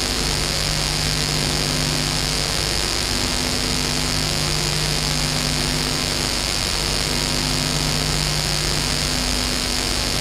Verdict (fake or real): fake